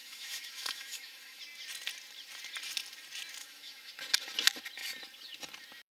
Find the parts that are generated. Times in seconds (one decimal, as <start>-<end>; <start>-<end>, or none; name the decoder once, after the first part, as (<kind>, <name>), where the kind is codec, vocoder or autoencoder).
0.0-1.4 (autoencoder, DAC-VAE); 3.4-3.9